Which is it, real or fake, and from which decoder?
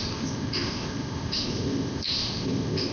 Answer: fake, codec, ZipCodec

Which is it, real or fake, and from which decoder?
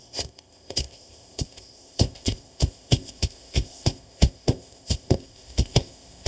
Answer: fake, codec, ZipCodec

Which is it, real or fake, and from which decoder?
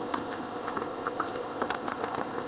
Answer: fake, codec, ZipCodec